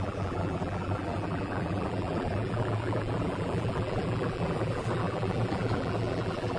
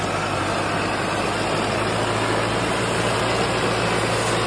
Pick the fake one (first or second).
first